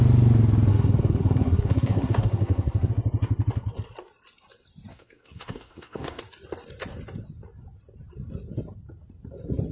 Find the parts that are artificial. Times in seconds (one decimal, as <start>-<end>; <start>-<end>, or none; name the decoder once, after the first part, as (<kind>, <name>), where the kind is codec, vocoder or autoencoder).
0.7-2.9 (codec, SNAC); 4.9-6.2